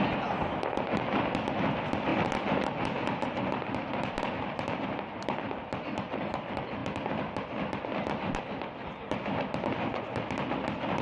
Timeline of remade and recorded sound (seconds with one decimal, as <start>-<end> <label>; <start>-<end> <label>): 0.0-11.0 recorded